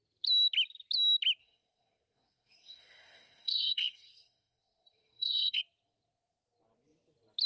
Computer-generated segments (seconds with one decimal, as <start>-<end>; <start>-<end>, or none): 1.4-5.6